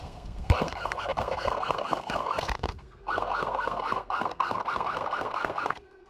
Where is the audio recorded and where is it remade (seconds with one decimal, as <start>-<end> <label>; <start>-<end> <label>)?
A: 0.0-6.1 remade